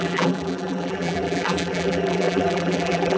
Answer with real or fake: fake